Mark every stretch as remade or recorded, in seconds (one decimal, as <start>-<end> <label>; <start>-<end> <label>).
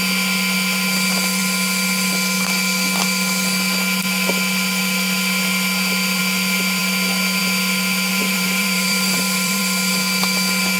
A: 0.0-8.1 recorded; 8.1-9.6 remade; 9.6-10.8 recorded